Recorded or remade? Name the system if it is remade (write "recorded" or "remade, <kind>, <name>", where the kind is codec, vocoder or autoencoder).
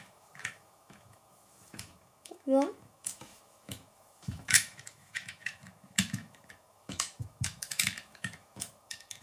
remade, autoencoder, DAC-VAE